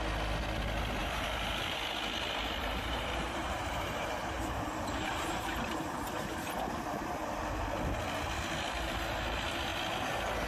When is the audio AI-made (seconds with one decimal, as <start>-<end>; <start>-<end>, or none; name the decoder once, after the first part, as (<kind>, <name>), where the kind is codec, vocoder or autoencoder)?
1.0-6.0 (vocoder, BigVGAN v2)